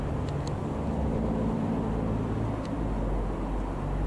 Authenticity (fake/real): real